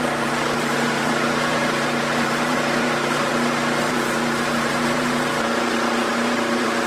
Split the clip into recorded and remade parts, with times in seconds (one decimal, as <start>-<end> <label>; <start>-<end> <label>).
0.0-3.3 remade; 3.3-3.9 recorded; 3.9-6.9 remade